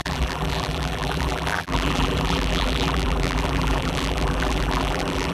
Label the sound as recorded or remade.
remade